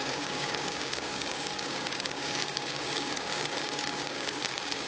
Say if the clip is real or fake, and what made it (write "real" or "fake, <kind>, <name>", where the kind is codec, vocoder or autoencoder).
fake, codec, DAC